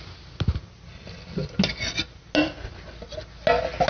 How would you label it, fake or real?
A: real